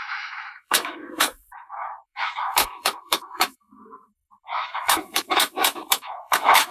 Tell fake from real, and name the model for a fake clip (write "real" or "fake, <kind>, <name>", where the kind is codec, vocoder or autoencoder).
fake, autoencoder, DAC-VAE